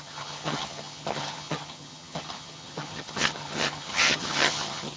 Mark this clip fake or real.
fake